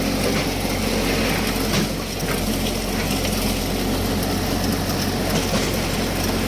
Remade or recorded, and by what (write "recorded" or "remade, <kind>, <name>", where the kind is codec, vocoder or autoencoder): recorded